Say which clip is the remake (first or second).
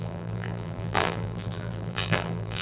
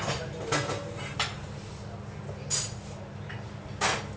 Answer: first